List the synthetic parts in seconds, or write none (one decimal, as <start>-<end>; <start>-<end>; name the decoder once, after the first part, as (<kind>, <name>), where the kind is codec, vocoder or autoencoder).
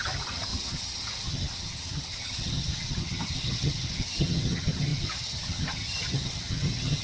0.0-7.0 (vocoder, HiFi-GAN)